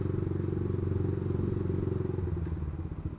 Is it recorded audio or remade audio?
recorded